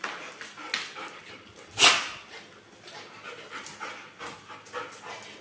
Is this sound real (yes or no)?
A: yes